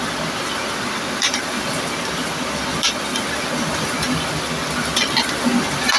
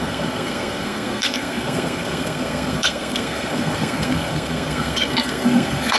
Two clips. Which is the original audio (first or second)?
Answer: first